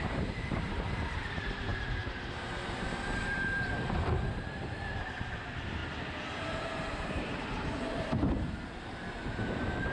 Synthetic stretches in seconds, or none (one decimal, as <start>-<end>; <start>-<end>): 0.0-5.8; 6.8-9.9